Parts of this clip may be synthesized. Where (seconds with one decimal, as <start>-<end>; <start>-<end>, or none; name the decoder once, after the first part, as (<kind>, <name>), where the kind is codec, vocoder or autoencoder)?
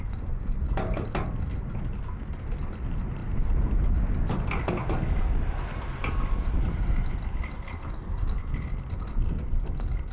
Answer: none